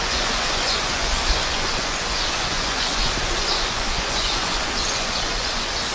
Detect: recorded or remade remade